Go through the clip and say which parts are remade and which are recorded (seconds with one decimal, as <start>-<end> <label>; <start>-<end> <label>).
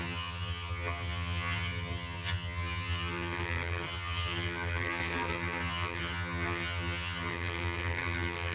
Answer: 0.0-8.5 remade